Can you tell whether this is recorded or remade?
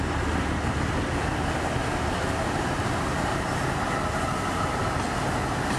recorded